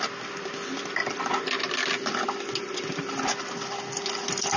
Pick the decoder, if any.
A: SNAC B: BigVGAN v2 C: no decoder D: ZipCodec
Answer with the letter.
C